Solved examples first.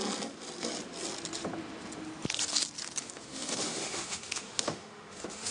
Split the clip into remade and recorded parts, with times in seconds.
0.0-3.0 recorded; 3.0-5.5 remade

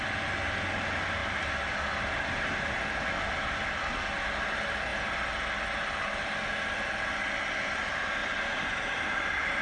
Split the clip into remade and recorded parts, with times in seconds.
0.0-4.9 recorded; 4.9-6.3 remade; 6.3-8.2 recorded; 8.2-9.6 remade